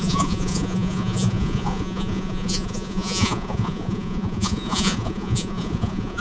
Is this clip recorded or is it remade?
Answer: remade